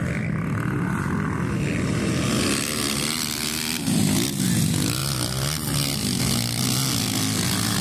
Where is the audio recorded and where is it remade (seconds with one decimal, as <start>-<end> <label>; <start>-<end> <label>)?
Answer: 0.0-7.8 recorded